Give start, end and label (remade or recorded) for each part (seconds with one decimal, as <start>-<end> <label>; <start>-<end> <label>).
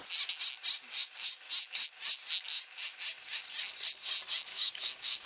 0.0-4.5 recorded; 4.5-5.3 remade